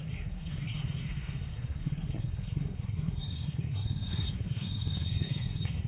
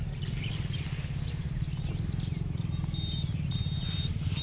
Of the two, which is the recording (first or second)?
second